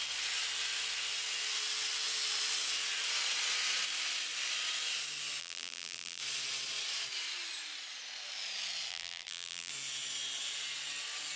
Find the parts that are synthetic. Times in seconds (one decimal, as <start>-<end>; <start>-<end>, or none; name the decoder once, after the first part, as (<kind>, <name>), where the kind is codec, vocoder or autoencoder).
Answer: 5.4-6.2 (vocoder, BigVGAN v2); 8.9-9.7